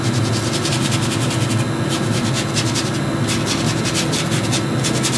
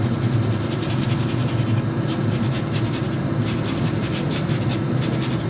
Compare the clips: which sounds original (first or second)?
first